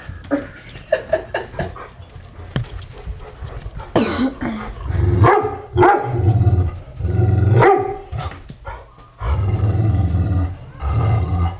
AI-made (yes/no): no